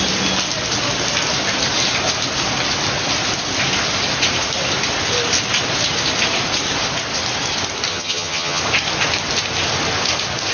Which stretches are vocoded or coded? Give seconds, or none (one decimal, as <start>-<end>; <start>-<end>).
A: 7.9-8.6